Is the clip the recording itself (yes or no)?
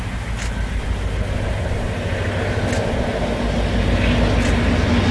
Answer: yes